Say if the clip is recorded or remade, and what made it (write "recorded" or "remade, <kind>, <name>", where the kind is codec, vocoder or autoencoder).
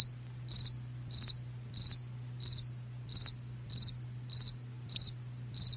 recorded